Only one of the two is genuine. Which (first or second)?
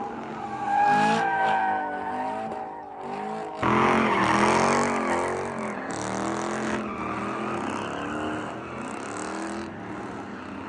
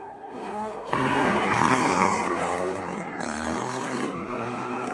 first